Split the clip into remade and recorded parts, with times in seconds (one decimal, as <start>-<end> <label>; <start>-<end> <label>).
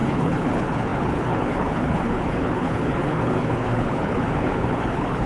0.0-5.3 remade